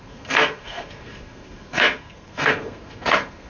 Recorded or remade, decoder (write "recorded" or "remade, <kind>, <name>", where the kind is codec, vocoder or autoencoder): remade, codec, SNAC